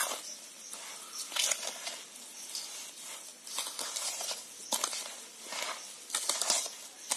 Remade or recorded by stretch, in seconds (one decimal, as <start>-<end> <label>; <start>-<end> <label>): 0.0-7.2 recorded